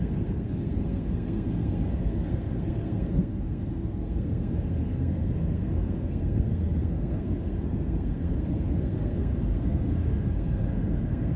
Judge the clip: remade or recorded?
remade